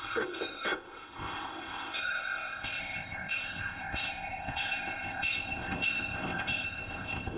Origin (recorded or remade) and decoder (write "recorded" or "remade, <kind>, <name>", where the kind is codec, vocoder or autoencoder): remade, codec, ZipCodec